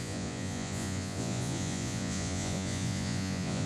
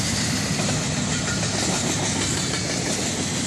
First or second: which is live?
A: second